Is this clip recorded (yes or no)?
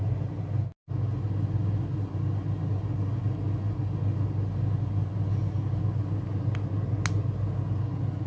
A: yes